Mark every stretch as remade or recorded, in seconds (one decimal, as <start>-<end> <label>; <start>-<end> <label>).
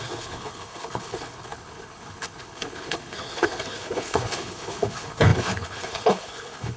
0.0-6.8 remade